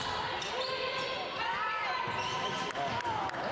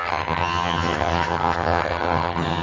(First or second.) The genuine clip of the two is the first